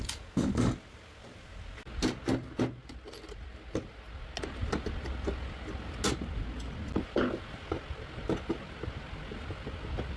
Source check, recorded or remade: recorded